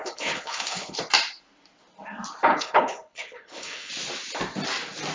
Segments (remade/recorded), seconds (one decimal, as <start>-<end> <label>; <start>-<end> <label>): 0.0-1.0 remade; 1.0-2.5 recorded; 2.5-3.9 remade; 3.9-5.1 recorded

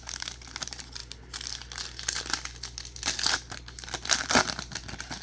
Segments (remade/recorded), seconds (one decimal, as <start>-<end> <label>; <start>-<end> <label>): 0.0-5.2 recorded

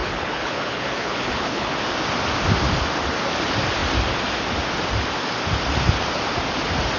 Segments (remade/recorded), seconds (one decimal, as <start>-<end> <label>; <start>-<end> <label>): 0.0-1.7 remade; 1.7-7.0 recorded

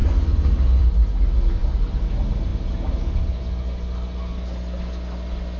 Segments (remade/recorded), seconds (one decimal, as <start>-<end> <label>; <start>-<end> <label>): 0.0-5.6 recorded

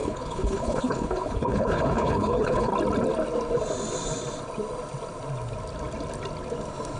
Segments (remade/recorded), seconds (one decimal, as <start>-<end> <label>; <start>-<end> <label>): 0.0-2.7 remade; 2.7-7.0 recorded

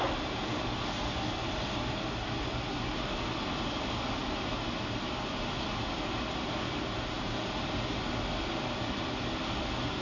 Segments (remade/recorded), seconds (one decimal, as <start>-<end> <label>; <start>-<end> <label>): 0.0-10.0 recorded

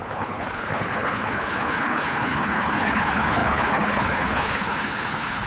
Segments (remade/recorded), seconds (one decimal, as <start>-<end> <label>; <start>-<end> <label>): 0.0-5.5 remade

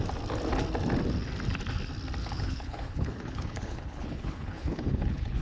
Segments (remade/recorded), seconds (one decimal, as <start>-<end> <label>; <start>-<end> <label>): 0.0-2.2 recorded; 2.2-5.4 remade